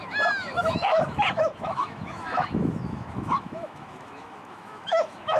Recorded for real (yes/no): no